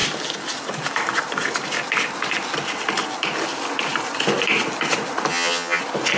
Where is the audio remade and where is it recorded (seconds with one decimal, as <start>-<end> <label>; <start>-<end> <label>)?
0.0-5.3 recorded; 5.3-5.8 remade; 5.8-6.2 recorded